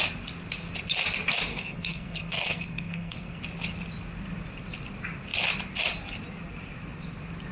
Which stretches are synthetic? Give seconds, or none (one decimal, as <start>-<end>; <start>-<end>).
1.5-3.4